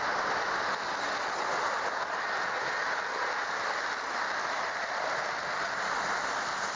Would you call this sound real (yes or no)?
yes